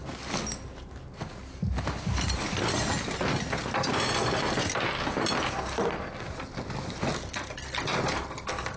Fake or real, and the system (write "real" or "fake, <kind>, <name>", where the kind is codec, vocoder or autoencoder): real